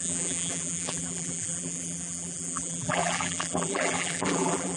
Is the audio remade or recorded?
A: remade